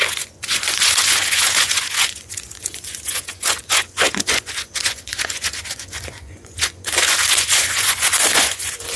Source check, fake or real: fake